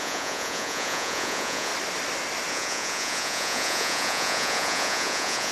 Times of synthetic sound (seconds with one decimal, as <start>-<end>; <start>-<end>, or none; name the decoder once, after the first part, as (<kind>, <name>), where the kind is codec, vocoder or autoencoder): 0.0-1.7 (vocoder, Vocos); 2.5-5.5